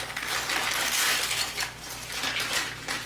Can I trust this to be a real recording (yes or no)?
yes